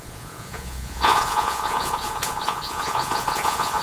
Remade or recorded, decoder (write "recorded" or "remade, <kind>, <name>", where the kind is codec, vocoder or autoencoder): remade, vocoder, Vocos